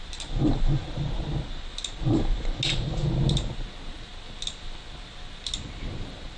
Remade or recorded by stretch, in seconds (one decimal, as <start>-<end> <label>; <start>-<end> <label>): 0.0-6.4 recorded